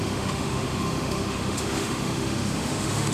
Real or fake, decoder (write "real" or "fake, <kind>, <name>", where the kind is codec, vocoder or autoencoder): fake, autoencoder, DAC-VAE